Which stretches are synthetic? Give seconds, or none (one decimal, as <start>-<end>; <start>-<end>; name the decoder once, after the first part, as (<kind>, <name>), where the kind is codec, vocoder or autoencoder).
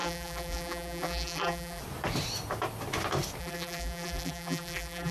0.0-1.8 (vocoder, BigVGAN v2); 3.4-5.1